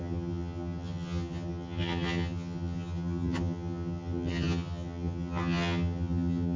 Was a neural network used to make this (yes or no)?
yes